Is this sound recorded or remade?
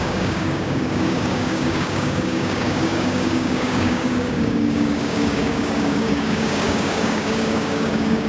remade